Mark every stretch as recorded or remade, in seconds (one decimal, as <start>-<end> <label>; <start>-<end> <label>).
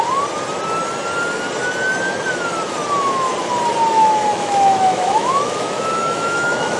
0.0-3.9 recorded; 3.9-6.8 remade